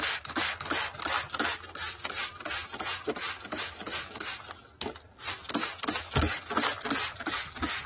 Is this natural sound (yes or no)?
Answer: yes